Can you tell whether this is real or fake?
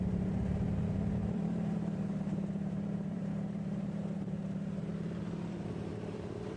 fake